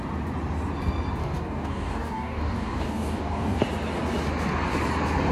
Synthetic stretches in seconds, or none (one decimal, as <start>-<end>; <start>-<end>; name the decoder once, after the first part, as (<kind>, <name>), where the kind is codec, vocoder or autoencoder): 1.2-3.6 (codec, DAC)